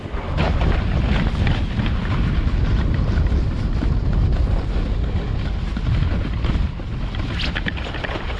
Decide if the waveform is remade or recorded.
recorded